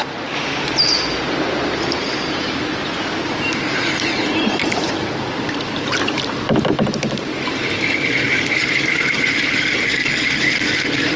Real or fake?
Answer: fake